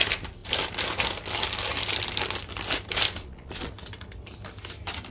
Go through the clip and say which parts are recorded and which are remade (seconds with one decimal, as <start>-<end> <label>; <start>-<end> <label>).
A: 0.0-3.2 recorded; 3.2-3.7 remade; 3.7-5.1 recorded